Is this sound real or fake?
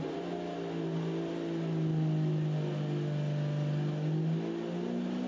real